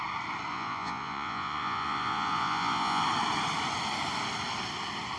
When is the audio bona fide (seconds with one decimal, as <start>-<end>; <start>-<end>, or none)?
0.0-0.5; 3.0-5.2